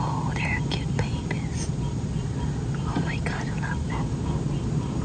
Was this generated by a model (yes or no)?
no